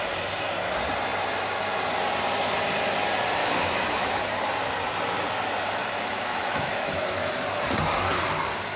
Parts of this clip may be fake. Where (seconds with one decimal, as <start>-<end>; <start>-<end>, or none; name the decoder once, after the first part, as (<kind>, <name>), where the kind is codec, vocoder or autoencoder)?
3.4-4.2 (autoencoder, DAC-VAE); 5.8-7.3